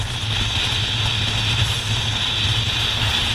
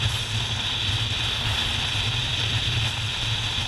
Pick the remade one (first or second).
second